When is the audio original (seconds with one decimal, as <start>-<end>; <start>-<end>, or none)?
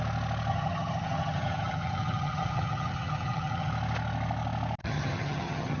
0.0-0.5; 3.7-4.8